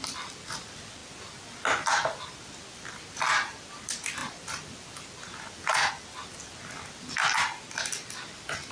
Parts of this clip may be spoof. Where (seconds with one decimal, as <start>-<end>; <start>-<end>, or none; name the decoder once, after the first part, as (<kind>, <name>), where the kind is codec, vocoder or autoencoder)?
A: none